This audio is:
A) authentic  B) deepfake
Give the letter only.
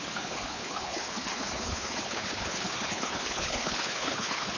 B